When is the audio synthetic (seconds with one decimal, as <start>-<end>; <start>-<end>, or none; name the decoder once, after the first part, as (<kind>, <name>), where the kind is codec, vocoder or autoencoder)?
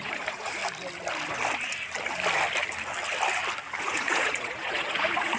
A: 0.0-0.6 (vocoder, Vocos); 3.8-5.4